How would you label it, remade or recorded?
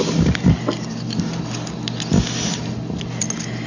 recorded